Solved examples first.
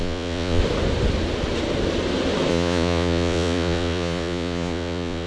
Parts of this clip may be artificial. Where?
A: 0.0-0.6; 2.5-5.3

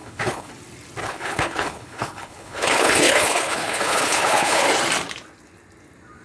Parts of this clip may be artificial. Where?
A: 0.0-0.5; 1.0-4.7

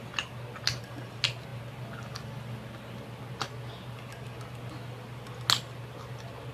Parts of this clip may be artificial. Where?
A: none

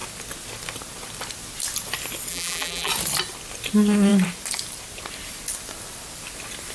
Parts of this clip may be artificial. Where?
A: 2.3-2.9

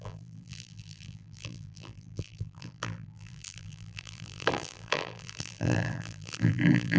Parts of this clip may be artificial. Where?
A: 0.0-7.0